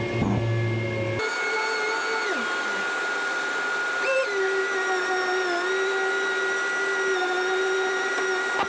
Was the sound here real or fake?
real